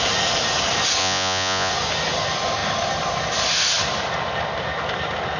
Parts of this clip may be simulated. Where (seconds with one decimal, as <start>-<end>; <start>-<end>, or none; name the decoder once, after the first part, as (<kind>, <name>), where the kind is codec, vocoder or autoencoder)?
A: 1.0-1.7 (vocoder, Vocos)